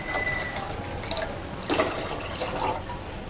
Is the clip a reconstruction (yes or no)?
no